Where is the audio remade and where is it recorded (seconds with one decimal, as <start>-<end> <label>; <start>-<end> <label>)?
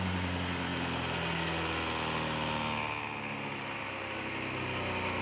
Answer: 0.0-5.2 recorded